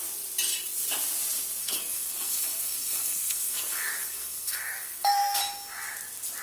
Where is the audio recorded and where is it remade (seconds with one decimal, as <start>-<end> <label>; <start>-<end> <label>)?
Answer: 0.0-1.6 recorded; 1.6-5.4 remade; 5.4-6.4 recorded